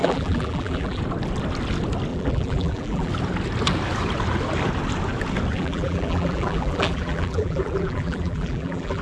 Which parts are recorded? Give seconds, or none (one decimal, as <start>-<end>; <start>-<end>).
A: 1.0-2.1; 3.1-5.5